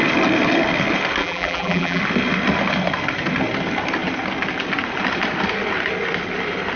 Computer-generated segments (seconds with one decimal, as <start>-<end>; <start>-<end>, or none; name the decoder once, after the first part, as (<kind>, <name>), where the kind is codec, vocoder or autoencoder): 1.2-2.0 (vocoder, BigVGAN v2)